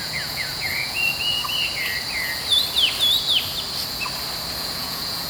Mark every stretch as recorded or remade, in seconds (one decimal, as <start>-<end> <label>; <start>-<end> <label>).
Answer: 0.0-1.4 remade; 1.4-4.6 recorded; 4.6-5.3 remade